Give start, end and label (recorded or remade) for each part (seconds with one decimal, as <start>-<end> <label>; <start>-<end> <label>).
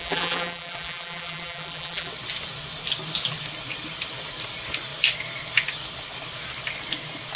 0.0-2.1 remade; 2.1-7.4 recorded